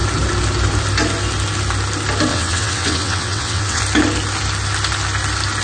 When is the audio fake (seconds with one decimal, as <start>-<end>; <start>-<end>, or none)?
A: 2.3-3.8